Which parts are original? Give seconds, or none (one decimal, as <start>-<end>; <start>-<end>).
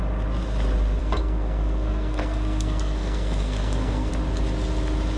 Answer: 0.0-1.0; 4.1-5.2